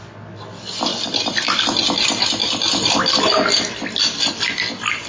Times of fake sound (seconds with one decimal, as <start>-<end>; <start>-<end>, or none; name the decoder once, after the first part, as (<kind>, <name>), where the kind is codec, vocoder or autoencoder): none